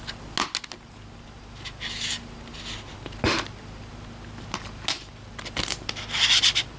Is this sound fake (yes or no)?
no